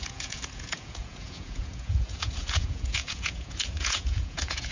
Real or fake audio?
fake